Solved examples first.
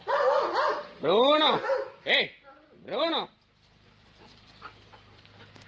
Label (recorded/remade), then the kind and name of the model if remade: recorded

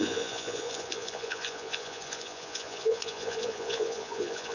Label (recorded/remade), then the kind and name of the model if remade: remade, vocoder, Vocos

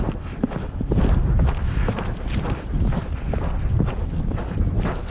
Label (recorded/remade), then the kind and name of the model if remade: recorded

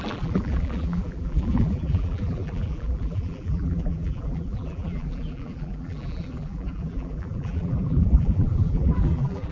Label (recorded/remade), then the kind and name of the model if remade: remade, vocoder, BigVGAN v2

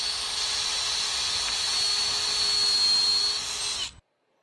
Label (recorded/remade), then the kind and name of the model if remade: recorded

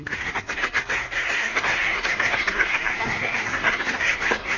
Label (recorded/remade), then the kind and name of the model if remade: remade, codec, SNAC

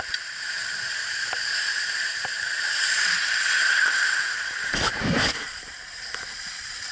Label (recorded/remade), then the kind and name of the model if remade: remade, vocoder, BigVGAN v2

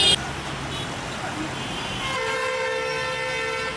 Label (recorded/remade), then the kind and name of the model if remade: recorded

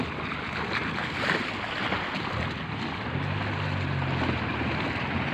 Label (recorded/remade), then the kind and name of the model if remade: recorded